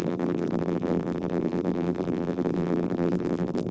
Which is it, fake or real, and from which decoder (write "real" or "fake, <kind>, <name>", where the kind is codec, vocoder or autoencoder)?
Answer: fake, vocoder, BigVGAN v2